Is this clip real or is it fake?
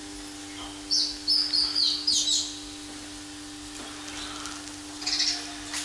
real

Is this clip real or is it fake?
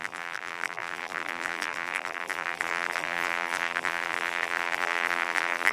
fake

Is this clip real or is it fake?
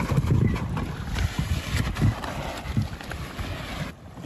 real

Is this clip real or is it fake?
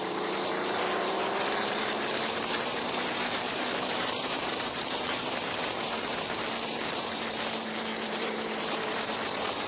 fake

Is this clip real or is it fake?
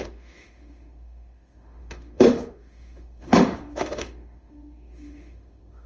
fake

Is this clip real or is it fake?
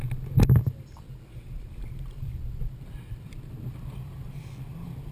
real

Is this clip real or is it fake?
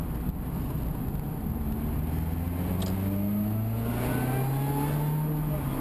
real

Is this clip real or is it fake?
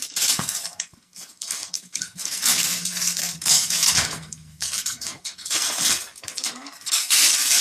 fake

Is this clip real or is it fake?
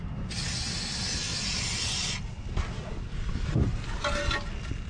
real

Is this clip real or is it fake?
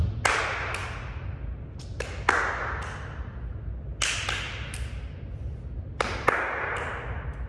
real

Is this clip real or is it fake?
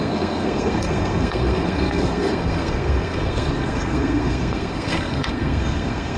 fake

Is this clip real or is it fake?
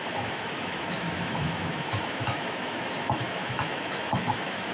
fake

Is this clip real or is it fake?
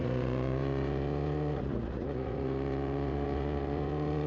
fake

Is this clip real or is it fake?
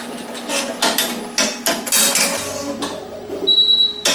real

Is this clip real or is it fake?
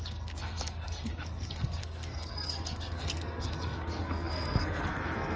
fake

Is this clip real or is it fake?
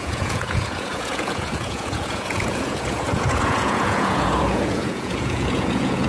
fake